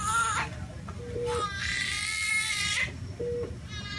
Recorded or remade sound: recorded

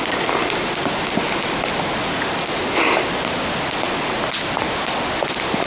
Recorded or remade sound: recorded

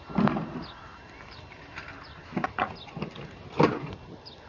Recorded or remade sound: recorded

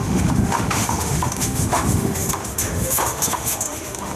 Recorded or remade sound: remade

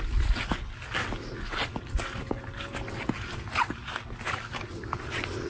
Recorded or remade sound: recorded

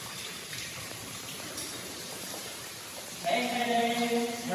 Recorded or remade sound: remade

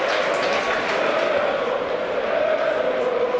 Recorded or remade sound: recorded